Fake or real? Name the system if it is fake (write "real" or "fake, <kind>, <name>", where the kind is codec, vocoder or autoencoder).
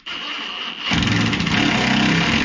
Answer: real